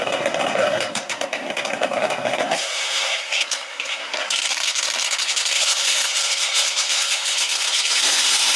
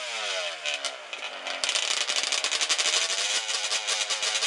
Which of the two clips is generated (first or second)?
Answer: first